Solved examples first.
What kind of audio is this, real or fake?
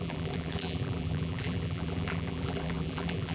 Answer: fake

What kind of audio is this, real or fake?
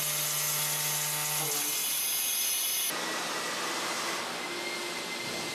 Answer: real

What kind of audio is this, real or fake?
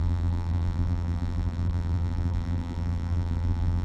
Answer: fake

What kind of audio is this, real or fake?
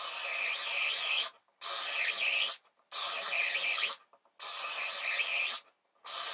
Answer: real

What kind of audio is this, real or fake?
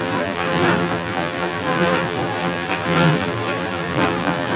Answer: fake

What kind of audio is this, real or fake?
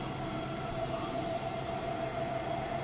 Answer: fake